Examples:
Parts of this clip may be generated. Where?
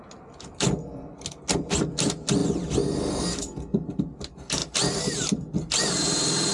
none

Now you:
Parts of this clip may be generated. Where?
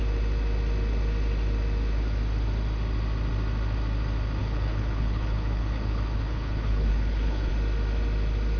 4.4-7.5 (codec, HILCodec)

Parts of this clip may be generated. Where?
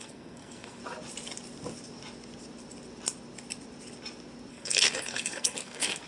0.0-0.8 (codec, SNAC); 4.5-6.1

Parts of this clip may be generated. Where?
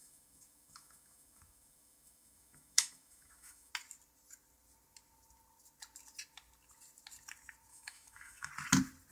0.0-3.7 (autoencoder, DAC-VAE); 7.7-8.5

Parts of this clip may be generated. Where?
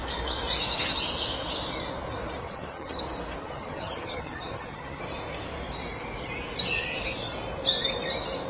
2.4-3.0 (vocoder, HiFi-GAN); 3.4-5.0